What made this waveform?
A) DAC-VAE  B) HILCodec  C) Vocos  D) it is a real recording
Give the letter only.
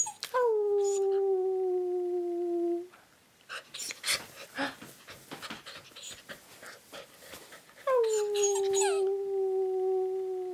D